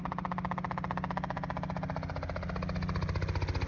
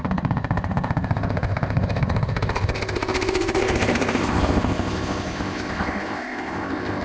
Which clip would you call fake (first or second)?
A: second